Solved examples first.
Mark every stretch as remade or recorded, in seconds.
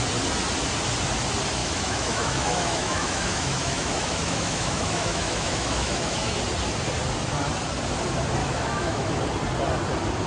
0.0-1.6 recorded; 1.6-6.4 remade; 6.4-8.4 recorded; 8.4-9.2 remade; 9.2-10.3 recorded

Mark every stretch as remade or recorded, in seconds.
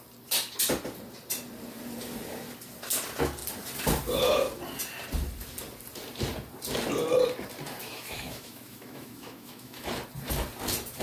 0.0-7.8 recorded; 7.8-9.9 remade; 9.9-11.0 recorded